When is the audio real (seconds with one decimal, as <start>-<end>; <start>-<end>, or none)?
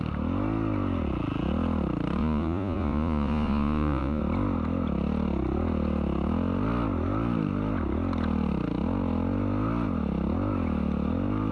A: 0.0-2.2; 4.2-11.5